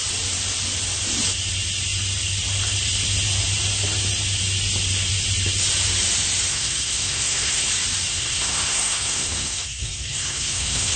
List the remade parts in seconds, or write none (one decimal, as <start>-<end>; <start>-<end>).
6.5-7.7; 8.1-11.0